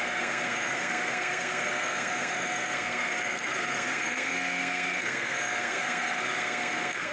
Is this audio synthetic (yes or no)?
yes